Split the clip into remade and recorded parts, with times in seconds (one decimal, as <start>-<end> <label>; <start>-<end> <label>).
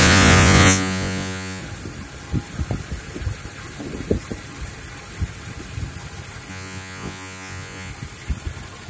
0.0-1.6 remade; 1.6-6.5 recorded; 6.5-7.9 remade; 7.9-8.9 recorded